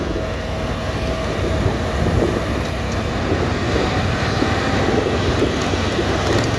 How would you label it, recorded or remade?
recorded